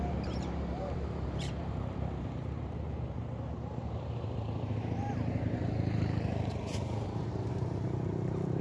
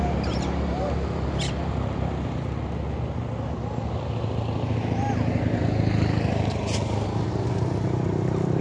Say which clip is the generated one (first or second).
first